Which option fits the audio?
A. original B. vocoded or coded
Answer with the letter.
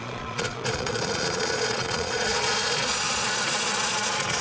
B